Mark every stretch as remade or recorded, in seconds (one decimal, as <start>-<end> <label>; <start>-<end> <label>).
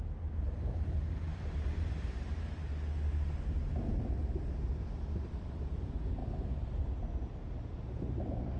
0.0-2.7 remade; 2.7-5.2 recorded; 5.2-6.2 remade; 6.2-7.7 recorded; 7.7-8.6 remade